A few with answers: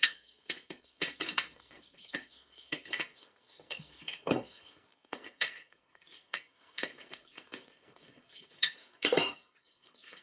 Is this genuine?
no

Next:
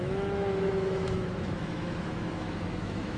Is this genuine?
no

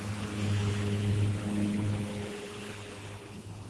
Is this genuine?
no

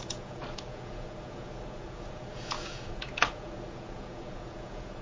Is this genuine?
no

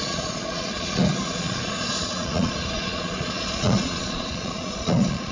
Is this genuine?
no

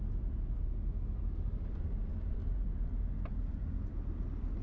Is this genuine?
yes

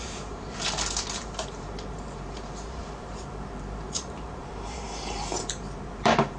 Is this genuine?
no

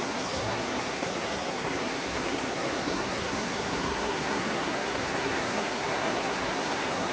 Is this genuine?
no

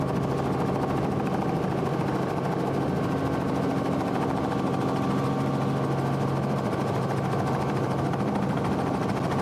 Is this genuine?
yes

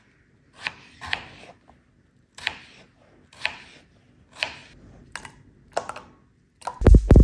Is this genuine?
yes